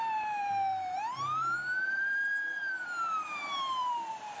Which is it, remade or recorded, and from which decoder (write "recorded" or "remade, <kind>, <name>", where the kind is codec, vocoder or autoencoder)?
remade, vocoder, BigVGAN v2